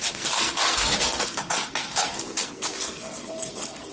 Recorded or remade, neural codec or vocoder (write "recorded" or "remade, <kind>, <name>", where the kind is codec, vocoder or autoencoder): remade, codec, SNAC